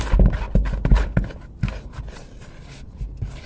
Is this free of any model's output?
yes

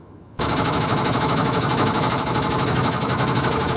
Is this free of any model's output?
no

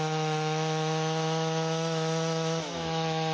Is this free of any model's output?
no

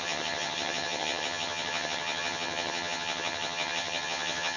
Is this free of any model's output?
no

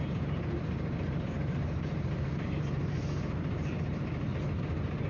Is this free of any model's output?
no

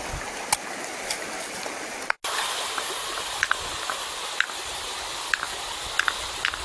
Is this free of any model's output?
yes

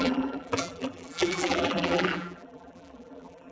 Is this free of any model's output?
no